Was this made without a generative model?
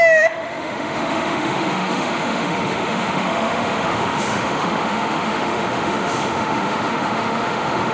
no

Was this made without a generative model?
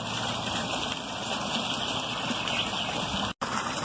yes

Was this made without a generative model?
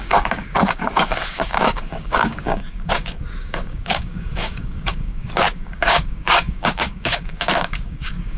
no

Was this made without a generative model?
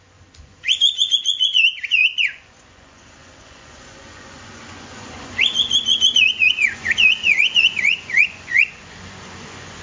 no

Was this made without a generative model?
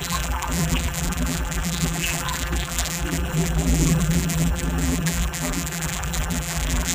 no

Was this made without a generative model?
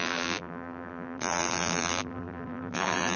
no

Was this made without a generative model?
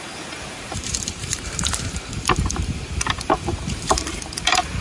no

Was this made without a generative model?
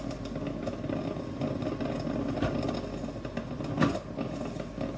yes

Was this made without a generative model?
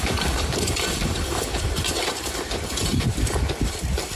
yes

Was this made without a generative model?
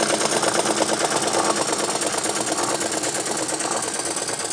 yes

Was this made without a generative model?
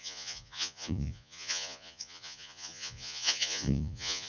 no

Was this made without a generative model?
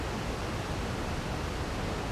yes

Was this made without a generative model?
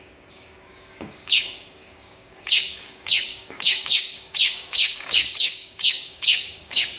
no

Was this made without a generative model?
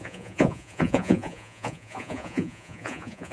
no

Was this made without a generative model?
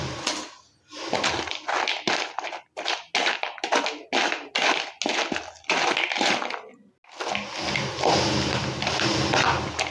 yes